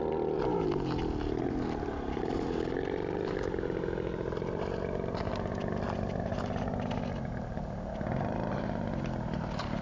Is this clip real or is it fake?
real